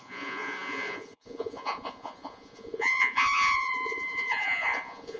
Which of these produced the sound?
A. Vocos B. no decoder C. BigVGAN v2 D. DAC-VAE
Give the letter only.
A